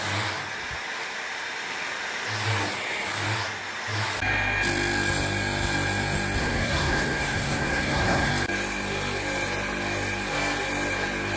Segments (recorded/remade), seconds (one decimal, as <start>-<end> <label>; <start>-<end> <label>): 0.0-6.4 recorded; 6.4-8.3 remade; 8.3-11.4 recorded